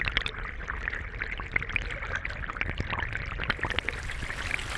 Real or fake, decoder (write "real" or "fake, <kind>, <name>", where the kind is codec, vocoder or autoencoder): real